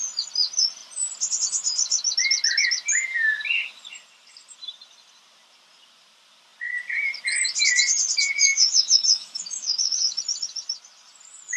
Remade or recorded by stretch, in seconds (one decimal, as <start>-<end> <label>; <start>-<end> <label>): 0.0-8.5 recorded; 8.5-10.2 remade; 10.2-11.6 recorded